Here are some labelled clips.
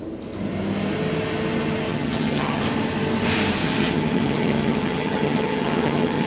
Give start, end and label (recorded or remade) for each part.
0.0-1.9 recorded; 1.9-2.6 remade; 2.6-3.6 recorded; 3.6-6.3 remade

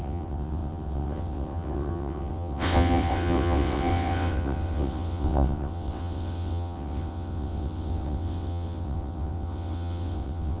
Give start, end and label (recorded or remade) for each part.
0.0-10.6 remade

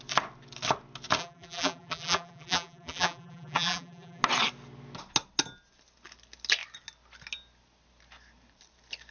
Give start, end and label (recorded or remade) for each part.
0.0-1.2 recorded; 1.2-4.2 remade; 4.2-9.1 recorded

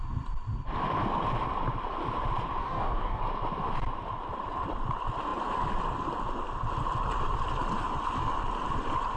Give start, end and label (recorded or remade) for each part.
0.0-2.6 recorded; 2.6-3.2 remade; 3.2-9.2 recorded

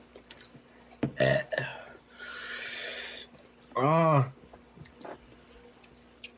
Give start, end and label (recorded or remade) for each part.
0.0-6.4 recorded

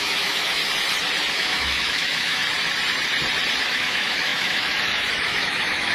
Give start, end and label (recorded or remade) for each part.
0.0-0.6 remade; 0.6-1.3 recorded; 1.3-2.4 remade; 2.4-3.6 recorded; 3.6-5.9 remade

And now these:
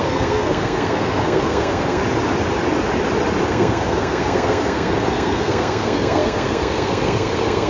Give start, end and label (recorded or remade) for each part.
0.0-2.0 remade; 2.0-3.5 recorded; 3.5-7.7 remade

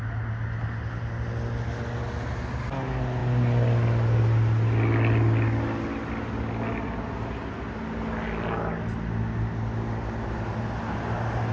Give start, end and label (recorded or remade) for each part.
0.0-11.5 recorded